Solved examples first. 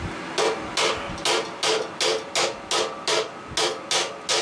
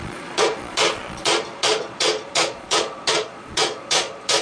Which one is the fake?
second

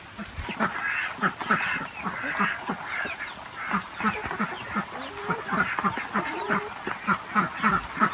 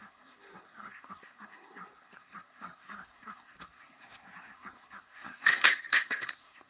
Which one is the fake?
second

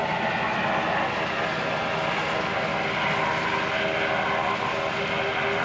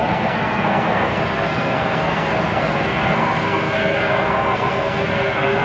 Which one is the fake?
second